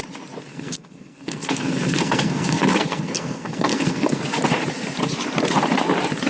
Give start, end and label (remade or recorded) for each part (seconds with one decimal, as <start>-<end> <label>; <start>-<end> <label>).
0.0-0.5 recorded; 0.5-4.2 remade; 4.2-6.3 recorded